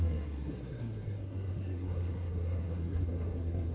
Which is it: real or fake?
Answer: fake